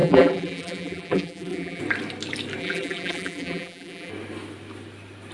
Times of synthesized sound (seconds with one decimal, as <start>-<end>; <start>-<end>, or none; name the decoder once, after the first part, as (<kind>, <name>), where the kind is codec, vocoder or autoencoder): 0.0-1.8 (vocoder, BigVGAN v2); 2.6-4.1